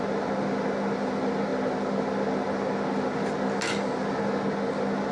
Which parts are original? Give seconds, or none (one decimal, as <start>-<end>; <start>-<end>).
0.0-5.1